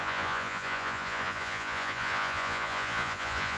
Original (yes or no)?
no